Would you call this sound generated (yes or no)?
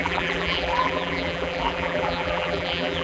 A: yes